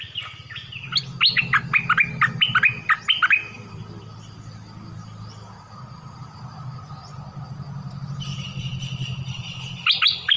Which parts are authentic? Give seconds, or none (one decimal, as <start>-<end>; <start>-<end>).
0.0-8.3; 9.6-10.4